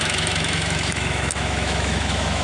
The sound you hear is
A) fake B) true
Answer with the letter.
A